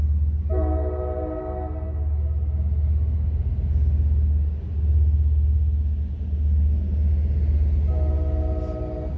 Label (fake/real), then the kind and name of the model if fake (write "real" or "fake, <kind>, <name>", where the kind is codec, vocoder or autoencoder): real